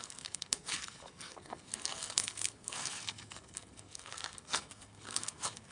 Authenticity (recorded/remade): remade